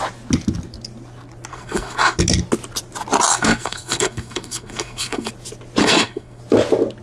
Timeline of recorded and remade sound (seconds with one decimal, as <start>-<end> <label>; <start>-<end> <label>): 0.0-1.5 recorded; 1.5-2.2 remade; 2.2-3.3 recorded; 3.3-5.3 remade; 5.3-5.8 recorded; 5.8-6.4 remade; 6.4-7.0 recorded